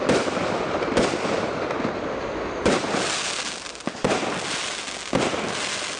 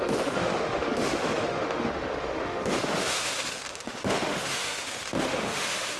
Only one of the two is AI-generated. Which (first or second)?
second